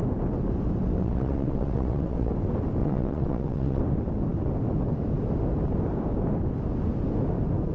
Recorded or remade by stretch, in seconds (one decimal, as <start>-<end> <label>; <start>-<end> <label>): 0.0-1.0 recorded; 1.0-2.3 remade; 2.3-2.8 recorded; 2.8-3.8 remade; 3.8-7.7 recorded

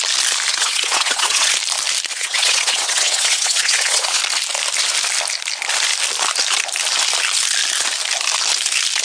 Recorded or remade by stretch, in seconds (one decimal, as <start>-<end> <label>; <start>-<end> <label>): 0.0-0.5 recorded; 0.5-1.5 remade; 1.5-2.1 recorded; 2.1-4.2 remade; 4.2-9.0 recorded

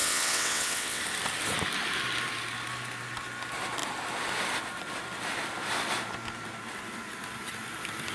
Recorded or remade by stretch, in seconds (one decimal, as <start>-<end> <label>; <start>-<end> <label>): 0.0-1.0 remade; 1.0-8.1 recorded

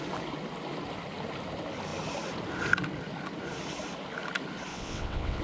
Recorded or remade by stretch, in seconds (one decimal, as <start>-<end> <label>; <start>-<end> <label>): 0.0-4.7 recorded; 4.7-5.4 remade

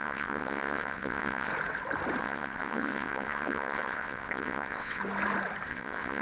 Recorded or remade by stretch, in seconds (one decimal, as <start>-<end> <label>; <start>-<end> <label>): 0.0-1.5 remade; 1.5-2.2 recorded; 2.2-5.0 remade; 5.0-5.7 recorded; 5.7-6.2 remade

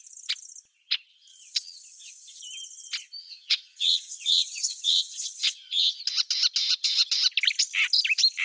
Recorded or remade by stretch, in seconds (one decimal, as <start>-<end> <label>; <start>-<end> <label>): 0.0-1.1 recorded; 1.1-2.4 remade; 2.4-3.2 recorded; 3.2-6.0 remade; 6.0-6.6 recorded; 6.6-7.1 remade; 7.1-8.4 recorded

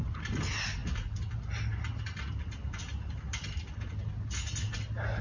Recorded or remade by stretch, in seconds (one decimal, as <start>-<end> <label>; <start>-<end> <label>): 0.0-5.2 recorded